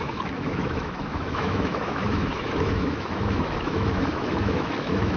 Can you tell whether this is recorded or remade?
remade